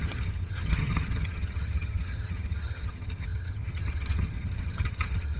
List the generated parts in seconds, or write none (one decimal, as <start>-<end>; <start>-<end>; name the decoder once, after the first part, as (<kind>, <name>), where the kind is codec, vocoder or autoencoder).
0.0-5.4 (vocoder, HiFi-GAN)

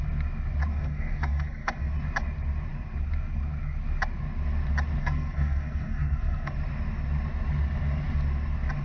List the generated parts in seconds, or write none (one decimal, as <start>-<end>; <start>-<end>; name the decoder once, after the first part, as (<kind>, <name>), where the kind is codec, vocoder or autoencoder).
0.7-1.9 (codec, SNAC); 5.0-6.5